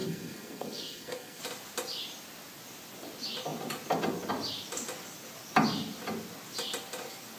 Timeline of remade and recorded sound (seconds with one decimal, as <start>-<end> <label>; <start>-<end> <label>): 0.0-1.4 remade; 1.4-7.4 recorded